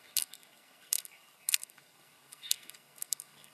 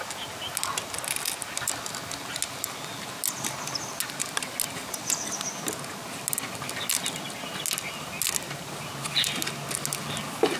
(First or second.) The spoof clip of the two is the first